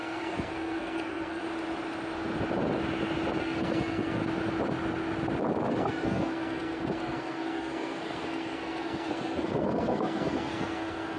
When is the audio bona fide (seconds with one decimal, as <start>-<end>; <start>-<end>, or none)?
1.4-3.4; 4.2-5.7